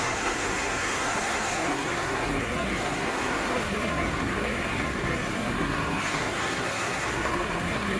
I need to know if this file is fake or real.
fake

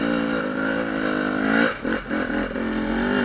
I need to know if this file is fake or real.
real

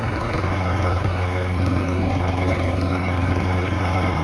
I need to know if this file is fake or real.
fake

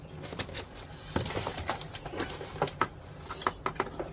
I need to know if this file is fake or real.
real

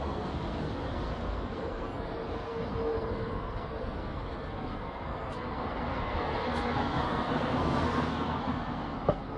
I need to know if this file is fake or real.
fake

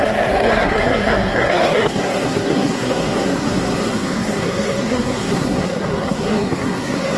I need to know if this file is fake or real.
fake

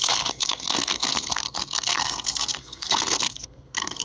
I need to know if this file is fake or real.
fake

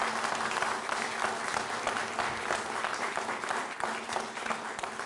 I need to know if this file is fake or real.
real